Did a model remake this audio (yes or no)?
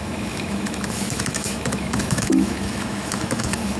yes